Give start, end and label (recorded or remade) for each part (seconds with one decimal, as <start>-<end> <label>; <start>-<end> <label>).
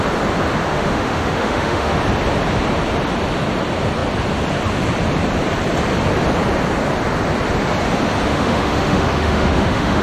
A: 0.0-0.7 recorded; 0.7-2.0 remade; 2.0-8.3 recorded; 8.3-10.0 remade